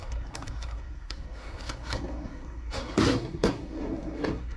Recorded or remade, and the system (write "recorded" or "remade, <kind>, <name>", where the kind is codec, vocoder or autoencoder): remade, codec, SNAC